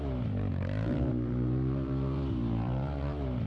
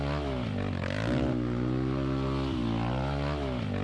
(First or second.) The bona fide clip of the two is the second